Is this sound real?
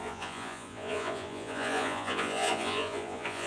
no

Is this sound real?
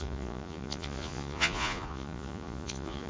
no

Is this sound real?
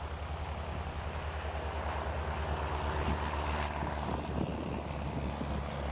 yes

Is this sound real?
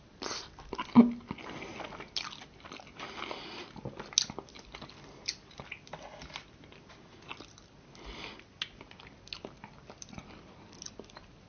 yes